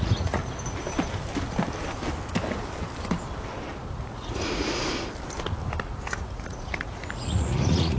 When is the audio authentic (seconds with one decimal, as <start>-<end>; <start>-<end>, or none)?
0.4-4.0; 4.8-6.1